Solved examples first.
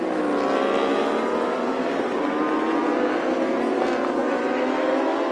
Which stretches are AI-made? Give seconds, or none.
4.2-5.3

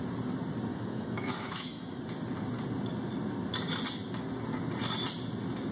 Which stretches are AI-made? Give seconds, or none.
0.7-2.0

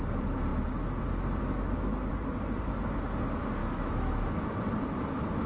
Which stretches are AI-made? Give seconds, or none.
1.4-2.1; 3.6-4.6